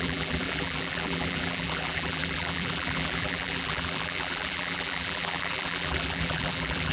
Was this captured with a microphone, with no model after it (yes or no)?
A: no